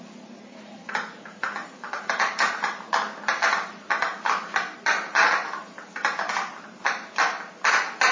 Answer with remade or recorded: recorded